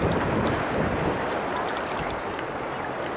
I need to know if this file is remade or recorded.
recorded